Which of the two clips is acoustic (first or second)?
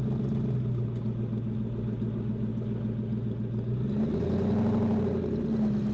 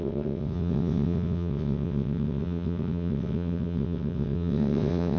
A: first